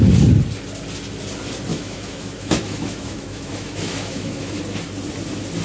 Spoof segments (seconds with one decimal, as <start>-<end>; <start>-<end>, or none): 1.7-4.6